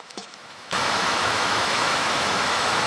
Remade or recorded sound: remade